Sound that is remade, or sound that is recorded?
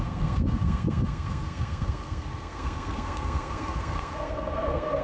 remade